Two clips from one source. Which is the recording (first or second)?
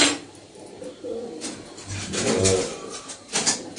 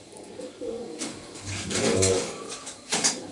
first